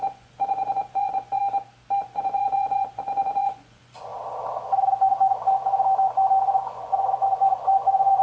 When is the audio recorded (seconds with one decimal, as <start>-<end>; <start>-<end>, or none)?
1.4-2.0; 4.1-6.4